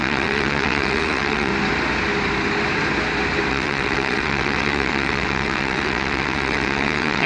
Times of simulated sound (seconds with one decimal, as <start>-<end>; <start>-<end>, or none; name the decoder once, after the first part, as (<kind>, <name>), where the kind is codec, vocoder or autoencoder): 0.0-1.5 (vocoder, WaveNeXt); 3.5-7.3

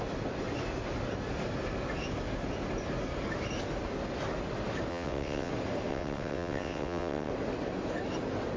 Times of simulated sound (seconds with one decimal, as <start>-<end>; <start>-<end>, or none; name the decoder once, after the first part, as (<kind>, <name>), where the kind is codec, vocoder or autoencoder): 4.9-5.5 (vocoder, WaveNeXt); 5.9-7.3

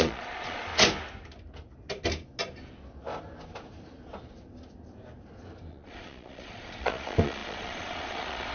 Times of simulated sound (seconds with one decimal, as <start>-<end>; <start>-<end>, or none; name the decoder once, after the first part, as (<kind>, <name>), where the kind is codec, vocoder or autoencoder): 0.0-0.7 (vocoder, Vocos); 5.7-8.5